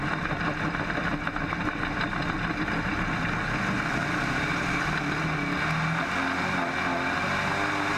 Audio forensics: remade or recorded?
recorded